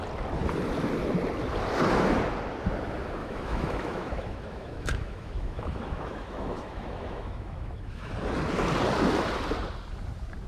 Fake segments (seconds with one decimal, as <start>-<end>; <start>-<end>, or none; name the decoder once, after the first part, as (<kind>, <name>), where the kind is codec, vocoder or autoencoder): 3.2-8.1 (autoencoder, DAC-VAE)

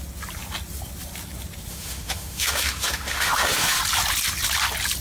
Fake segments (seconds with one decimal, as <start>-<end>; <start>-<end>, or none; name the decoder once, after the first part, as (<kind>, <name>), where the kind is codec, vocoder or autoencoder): 1.7-3.8 (autoencoder, DAC-VAE)

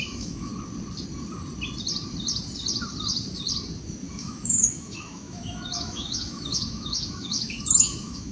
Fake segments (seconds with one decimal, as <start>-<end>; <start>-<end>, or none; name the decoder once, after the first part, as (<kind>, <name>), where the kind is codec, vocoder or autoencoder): 0.0-0.5 (autoencoder, DAC-VAE); 4.1-8.3

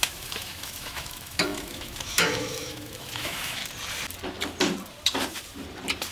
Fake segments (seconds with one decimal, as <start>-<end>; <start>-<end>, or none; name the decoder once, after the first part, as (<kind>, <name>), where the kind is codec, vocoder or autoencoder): 0.0-3.6 (autoencoder, DAC-VAE)

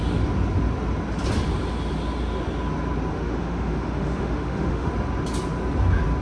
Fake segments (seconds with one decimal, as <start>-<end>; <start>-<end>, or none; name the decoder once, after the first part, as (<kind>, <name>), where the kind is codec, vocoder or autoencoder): 3.1-4.9 (autoencoder, DAC-VAE)

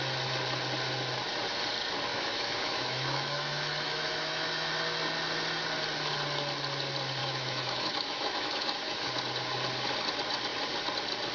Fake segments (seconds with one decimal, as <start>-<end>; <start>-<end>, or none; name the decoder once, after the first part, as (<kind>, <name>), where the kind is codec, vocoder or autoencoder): 2.1-4.7 (autoencoder, DAC-VAE); 7.2-9.1

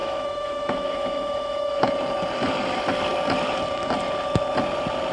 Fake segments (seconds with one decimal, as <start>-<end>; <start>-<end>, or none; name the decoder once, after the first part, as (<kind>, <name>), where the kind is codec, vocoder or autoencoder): 0.0-1.9 (autoencoder, DAC-VAE)